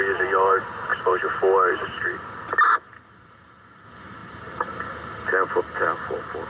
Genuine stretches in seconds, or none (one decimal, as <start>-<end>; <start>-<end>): 0.0-6.5